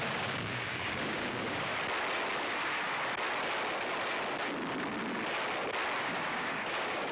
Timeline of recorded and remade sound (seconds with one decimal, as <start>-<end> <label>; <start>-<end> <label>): 0.0-1.7 remade; 1.7-6.0 recorded; 6.0-7.1 remade